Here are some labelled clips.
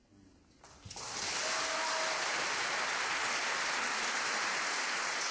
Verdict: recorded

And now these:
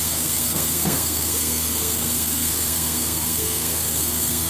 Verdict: remade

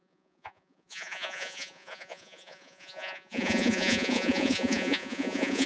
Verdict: remade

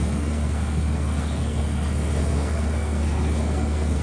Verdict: remade